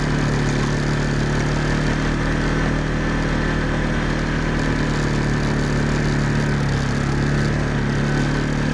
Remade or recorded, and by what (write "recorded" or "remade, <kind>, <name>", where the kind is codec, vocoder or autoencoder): recorded